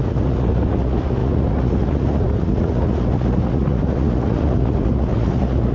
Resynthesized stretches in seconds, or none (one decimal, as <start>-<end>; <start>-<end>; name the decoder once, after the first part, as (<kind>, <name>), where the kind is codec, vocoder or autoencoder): 0.0-5.7 (vocoder, Vocos)